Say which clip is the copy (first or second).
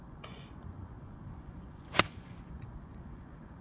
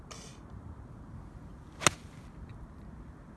first